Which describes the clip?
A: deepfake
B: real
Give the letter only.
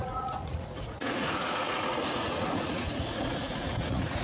A